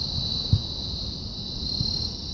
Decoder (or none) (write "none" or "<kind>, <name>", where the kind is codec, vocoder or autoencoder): none